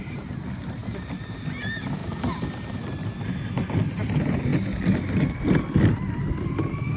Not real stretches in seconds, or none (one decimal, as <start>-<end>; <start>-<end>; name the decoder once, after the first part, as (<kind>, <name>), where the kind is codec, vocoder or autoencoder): none

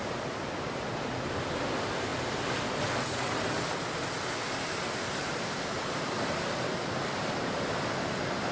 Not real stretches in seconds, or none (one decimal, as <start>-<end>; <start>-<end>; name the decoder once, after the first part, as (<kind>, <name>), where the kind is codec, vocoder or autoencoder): 5.2-7.7 (vocoder, BigVGAN v2)

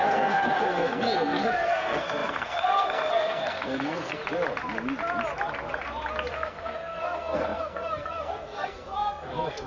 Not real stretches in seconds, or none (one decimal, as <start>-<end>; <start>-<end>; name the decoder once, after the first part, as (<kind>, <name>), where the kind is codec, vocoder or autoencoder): 0.0-4.2 (codec, SNAC); 6.3-9.7

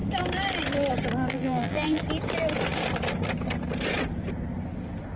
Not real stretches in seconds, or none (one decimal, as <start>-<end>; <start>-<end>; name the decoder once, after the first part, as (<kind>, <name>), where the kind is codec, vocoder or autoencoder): 1.3-2.0 (vocoder, BigVGAN v2)